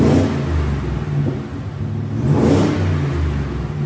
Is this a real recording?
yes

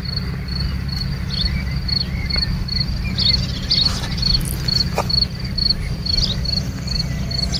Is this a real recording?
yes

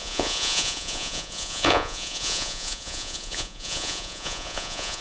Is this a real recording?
no